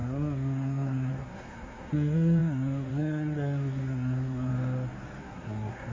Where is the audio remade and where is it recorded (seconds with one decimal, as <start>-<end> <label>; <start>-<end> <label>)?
0.0-4.5 remade; 4.5-5.2 recorded; 5.2-5.9 remade